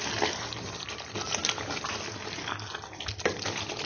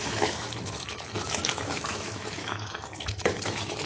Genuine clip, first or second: first